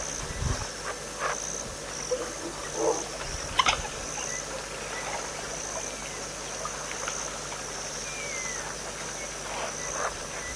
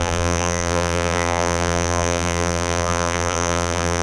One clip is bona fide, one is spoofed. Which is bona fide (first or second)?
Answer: first